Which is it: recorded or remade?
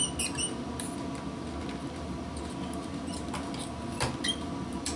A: recorded